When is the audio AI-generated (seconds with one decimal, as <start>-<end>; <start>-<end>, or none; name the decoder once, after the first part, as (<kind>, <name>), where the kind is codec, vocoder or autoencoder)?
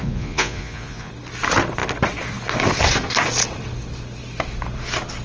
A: 0.0-1.1 (vocoder, Vocos)